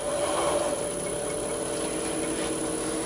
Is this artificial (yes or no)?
no